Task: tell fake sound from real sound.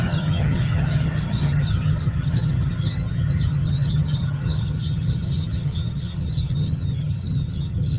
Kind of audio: fake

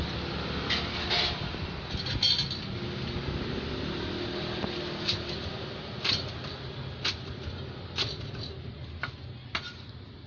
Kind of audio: real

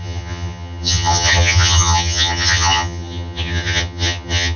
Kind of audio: fake